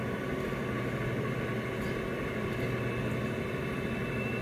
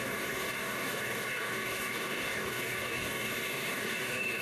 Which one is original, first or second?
first